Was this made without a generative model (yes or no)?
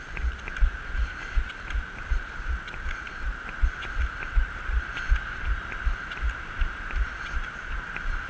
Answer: yes